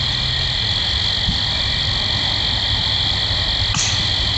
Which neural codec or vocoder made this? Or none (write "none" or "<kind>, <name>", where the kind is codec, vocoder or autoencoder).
none